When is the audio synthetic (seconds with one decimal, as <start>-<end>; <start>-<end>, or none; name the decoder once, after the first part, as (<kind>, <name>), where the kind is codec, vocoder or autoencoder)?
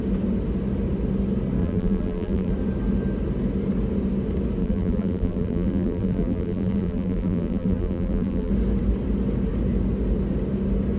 1.6-2.5 (vocoder, BigVGAN v2); 4.6-8.5